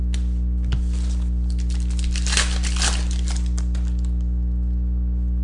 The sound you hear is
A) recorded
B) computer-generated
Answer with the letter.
B